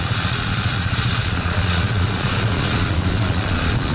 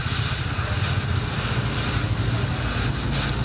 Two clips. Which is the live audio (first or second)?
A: second